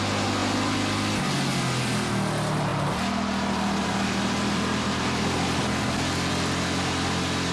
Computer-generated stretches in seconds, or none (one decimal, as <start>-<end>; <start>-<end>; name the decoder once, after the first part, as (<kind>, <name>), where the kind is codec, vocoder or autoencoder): none